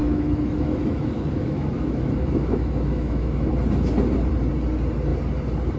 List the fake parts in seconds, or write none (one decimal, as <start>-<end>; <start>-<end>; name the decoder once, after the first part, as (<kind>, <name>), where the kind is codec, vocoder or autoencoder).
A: 0.0-3.5 (autoencoder, DAC-VAE)